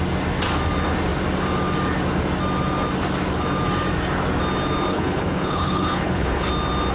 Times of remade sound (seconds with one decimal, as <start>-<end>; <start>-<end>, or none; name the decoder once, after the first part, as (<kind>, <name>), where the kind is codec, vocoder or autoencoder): 4.9-6.5 (codec, HILCodec)